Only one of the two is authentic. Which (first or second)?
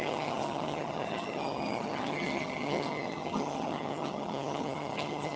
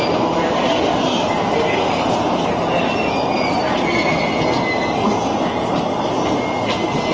second